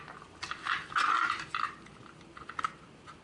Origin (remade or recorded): recorded